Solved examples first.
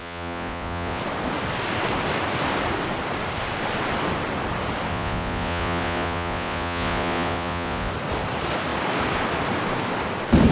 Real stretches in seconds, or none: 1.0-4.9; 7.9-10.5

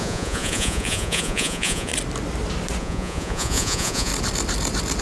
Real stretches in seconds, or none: 1.9-2.8; 4.1-5.0

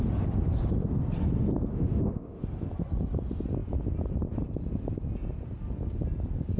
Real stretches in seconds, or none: 0.0-1.7; 2.4-6.6

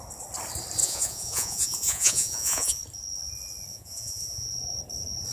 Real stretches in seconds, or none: 0.0-0.8; 2.8-3.7; 4.5-5.3